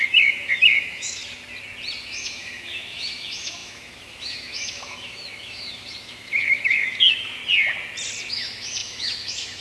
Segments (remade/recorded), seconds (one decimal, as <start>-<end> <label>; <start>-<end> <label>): 0.0-1.2 remade; 1.2-2.0 recorded; 2.0-7.4 remade; 7.4-8.3 recorded; 8.3-9.6 remade